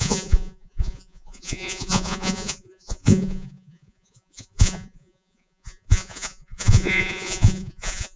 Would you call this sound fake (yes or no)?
yes